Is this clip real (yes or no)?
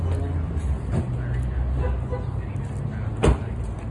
yes